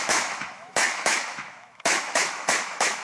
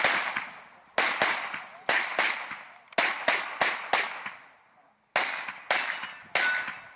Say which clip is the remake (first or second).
first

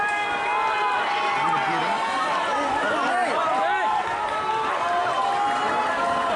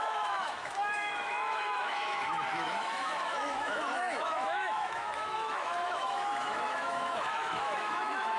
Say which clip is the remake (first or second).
second